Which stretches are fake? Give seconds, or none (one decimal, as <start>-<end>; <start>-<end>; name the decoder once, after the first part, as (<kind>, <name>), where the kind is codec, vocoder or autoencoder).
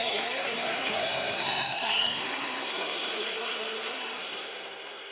0.0-5.1 (codec, SNAC)